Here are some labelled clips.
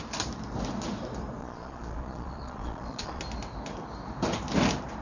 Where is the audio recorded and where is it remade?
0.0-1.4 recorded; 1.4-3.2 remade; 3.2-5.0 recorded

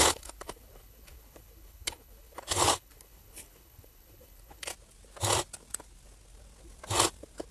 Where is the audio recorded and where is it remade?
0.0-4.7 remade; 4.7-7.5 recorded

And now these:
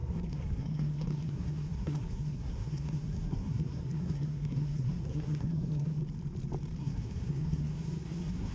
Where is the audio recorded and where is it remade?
0.0-6.0 remade; 6.0-6.8 recorded; 6.8-8.5 remade